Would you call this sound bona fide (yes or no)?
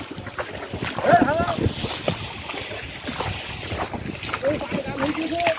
yes